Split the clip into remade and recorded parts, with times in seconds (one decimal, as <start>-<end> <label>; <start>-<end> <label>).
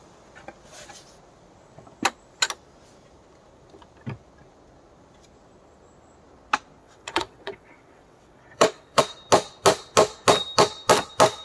0.0-6.8 recorded; 6.8-9.0 remade; 9.0-11.4 recorded